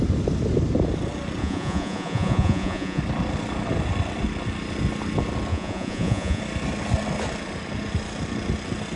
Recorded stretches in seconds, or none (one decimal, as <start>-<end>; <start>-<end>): 0.0-1.4; 3.0-5.5; 6.4-9.0